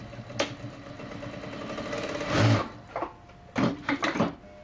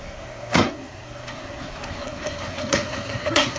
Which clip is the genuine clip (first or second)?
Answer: first